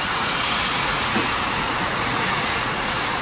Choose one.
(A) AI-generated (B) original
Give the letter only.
A